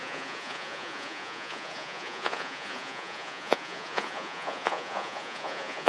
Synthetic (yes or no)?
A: yes